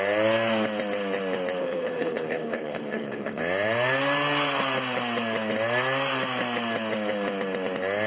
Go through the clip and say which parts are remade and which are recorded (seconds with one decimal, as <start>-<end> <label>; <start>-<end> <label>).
0.0-1.6 recorded; 1.6-3.4 remade; 3.4-8.1 recorded